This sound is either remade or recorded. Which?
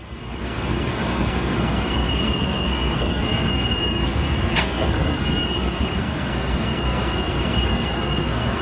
remade